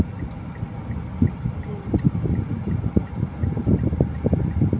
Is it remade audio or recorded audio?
recorded